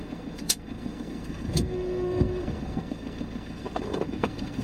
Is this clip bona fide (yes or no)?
no